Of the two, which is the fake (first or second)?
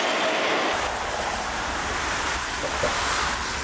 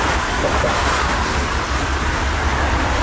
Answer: second